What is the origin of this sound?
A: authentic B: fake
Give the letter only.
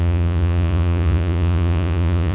B